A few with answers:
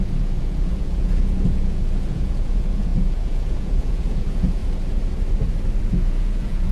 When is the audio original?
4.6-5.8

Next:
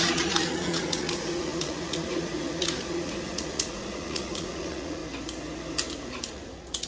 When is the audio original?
5.0-6.3

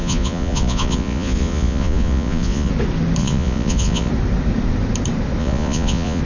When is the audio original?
2.7-3.2; 4.1-5.4

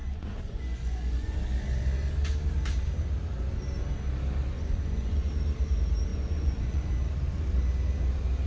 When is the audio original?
1.4-4.5; 5.3-6.1; 6.9-8.5